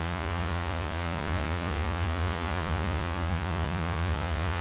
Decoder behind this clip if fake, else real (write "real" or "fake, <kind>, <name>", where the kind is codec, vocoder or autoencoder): fake, vocoder, Vocos